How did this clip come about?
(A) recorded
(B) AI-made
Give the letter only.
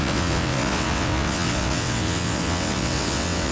B